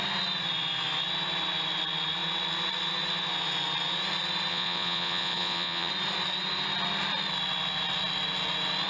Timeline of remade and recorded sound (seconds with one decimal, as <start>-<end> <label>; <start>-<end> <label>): 0.0-4.5 recorded; 4.5-5.9 remade; 5.9-8.9 recorded